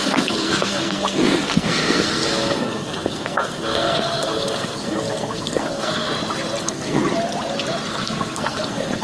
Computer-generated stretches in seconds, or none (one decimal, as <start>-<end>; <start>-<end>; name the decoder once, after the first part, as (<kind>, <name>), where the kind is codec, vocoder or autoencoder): 0.0-6.1 (codec, SNAC); 6.6-7.0; 7.9-9.0